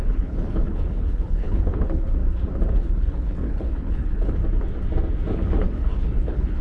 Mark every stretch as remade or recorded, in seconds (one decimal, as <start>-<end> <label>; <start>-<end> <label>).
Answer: 0.0-2.2 remade; 2.2-2.7 recorded; 2.7-4.4 remade; 4.4-5.3 recorded; 5.3-6.6 remade